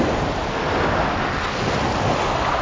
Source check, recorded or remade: recorded